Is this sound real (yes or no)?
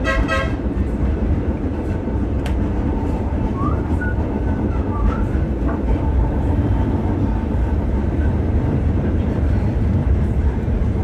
no